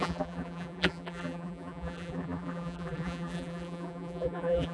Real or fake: fake